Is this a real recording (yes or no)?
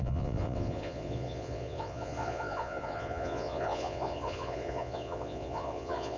no